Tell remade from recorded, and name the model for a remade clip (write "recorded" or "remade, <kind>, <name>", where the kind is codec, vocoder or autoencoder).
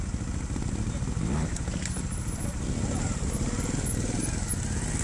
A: recorded